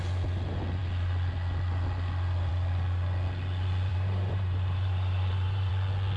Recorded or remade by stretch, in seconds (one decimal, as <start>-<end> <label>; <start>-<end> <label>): 0.0-3.9 recorded; 3.9-5.7 remade; 5.7-6.2 recorded